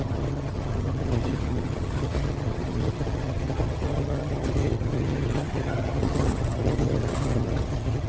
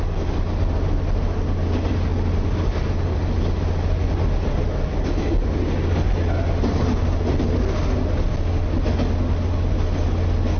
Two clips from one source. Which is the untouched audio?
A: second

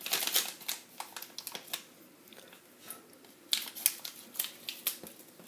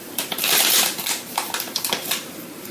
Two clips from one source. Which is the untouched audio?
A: first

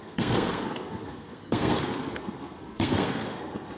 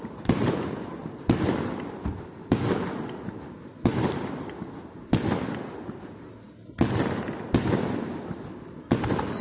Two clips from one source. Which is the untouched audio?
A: second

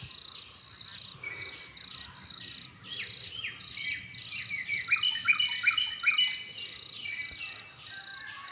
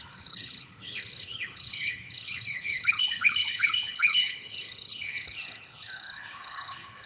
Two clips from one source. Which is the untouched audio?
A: first